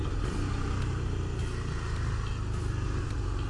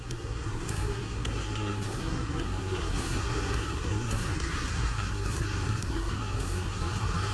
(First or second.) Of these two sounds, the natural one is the first